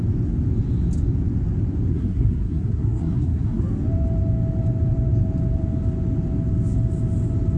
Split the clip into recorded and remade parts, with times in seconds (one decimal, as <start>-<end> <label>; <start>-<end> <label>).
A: 0.0-1.9 recorded; 1.9-3.6 remade; 3.6-7.6 recorded